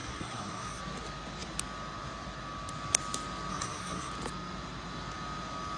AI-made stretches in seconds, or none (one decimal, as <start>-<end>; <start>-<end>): 0.0-0.8; 3.5-4.1